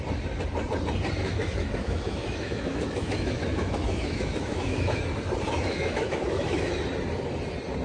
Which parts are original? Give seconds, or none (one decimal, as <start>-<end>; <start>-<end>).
0.0-1.2; 5.0-5.5; 6.7-7.8